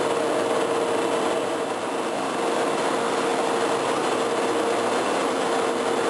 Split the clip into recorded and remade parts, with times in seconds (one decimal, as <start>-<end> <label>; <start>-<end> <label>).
0.0-6.1 recorded